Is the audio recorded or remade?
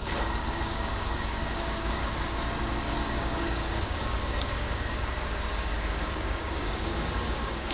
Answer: remade